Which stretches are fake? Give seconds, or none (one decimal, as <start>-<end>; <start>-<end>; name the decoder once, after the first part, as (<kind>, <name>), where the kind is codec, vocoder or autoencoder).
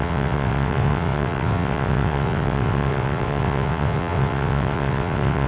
0.0-5.5 (vocoder, WaveNeXt)